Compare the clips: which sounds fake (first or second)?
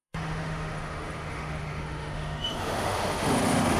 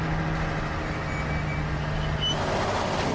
first